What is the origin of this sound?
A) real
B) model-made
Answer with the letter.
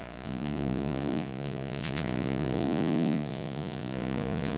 B